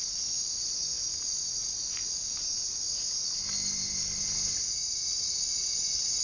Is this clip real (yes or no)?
yes